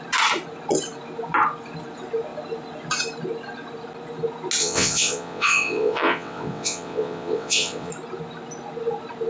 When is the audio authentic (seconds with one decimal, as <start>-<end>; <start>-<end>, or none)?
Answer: 0.0-4.6; 7.9-9.3